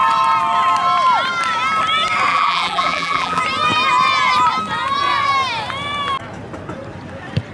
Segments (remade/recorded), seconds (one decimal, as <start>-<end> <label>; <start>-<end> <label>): 0.0-2.3 recorded; 2.3-3.4 remade; 3.4-7.5 recorded

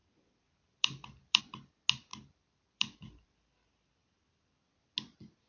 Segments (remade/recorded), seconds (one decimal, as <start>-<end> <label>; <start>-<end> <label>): 0.0-1.4 remade; 1.4-2.1 recorded; 2.1-4.6 remade; 4.6-5.5 recorded

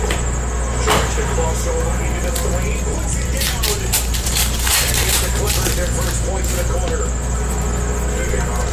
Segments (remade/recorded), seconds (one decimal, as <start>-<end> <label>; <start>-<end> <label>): 0.0-2.9 recorded; 2.9-6.3 remade; 6.3-8.7 recorded

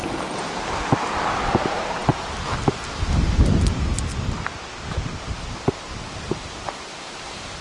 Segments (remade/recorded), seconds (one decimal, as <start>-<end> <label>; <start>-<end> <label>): 0.0-1.6 recorded; 1.6-2.0 remade; 2.0-3.4 recorded; 3.4-4.1 remade; 4.1-4.8 recorded; 4.8-7.6 remade

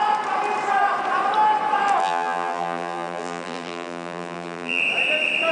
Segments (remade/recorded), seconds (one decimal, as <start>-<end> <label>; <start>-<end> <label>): 0.0-2.0 recorded; 2.0-4.8 remade; 4.8-5.5 recorded

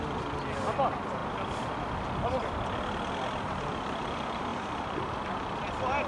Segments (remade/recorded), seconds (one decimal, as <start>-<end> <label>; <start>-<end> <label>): 0.0-4.5 recorded; 4.5-5.2 remade; 5.2-6.1 recorded

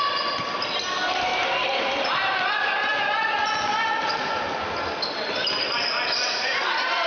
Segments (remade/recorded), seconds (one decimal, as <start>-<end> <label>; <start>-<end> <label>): 0.0-2.9 remade; 2.9-5.6 recorded; 5.6-7.1 remade